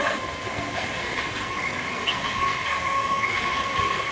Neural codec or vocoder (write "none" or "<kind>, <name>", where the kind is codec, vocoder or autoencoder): codec, SNAC